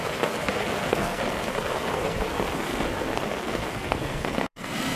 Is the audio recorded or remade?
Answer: remade